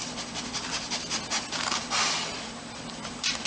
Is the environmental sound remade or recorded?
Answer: recorded